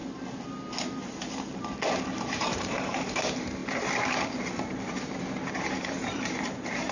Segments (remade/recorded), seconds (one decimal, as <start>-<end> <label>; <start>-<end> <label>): 0.0-2.0 recorded; 2.0-3.6 remade; 3.6-5.5 recorded; 5.5-6.9 remade